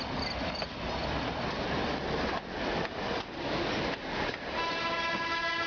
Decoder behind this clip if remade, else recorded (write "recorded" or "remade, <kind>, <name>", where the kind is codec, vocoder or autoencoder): recorded